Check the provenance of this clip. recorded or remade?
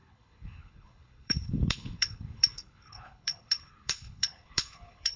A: remade